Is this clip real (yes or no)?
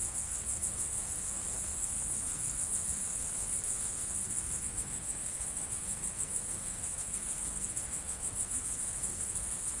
no